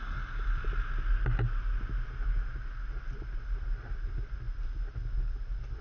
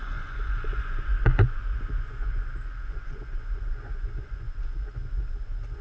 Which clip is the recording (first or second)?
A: first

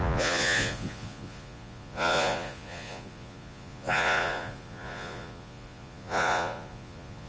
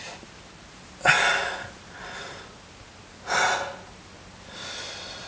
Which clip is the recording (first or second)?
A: second